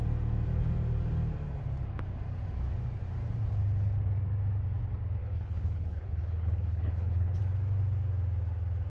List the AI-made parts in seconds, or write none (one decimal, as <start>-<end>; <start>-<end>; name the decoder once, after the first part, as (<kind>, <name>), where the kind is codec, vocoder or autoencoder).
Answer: 5.2-7.4 (codec, HILCodec)